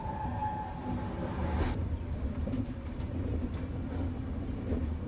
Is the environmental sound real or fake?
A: real